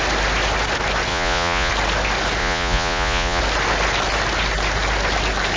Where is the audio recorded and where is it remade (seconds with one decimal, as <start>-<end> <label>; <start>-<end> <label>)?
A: 0.0-1.1 recorded; 1.1-1.7 remade; 1.7-2.4 recorded; 2.4-3.4 remade; 3.4-5.6 recorded